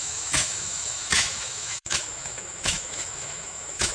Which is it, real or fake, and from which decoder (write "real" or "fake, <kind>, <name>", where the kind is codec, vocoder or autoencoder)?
fake, autoencoder, DAC-VAE